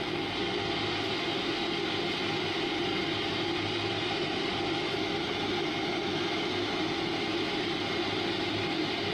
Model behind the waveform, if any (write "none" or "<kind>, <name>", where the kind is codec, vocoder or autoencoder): none